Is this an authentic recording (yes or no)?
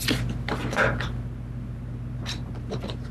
yes